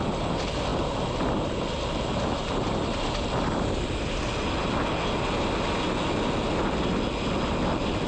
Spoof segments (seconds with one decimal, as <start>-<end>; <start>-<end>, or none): none